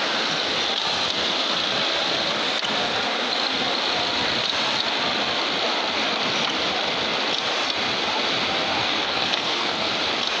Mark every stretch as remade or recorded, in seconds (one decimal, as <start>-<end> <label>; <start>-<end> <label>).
0.0-8.8 recorded; 8.8-9.9 remade; 9.9-10.4 recorded